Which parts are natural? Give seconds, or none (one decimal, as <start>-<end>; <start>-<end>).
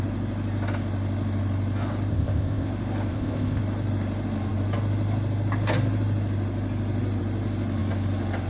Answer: 0.0-2.1; 2.7-3.1; 3.6-8.5